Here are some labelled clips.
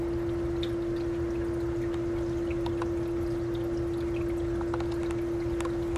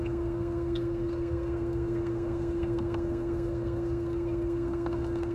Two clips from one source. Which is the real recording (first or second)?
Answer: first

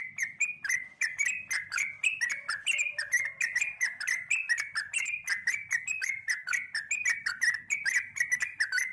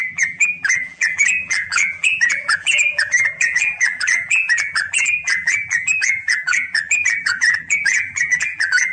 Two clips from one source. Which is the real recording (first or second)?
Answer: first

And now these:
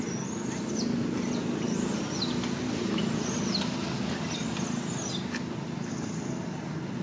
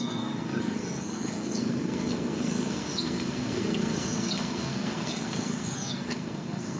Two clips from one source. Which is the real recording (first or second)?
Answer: first